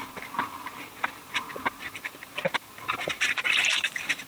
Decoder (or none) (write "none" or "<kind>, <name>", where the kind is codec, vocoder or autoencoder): none